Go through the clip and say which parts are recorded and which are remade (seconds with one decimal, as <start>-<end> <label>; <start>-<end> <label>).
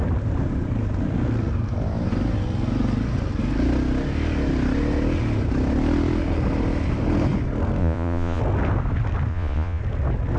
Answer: 0.0-7.8 recorded; 7.8-8.4 remade; 8.4-9.3 recorded; 9.3-9.8 remade; 9.8-10.4 recorded